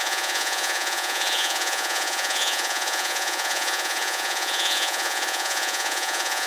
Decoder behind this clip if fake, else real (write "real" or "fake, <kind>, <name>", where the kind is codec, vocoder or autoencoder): fake, vocoder, Vocos